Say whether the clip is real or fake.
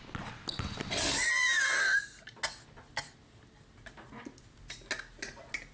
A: real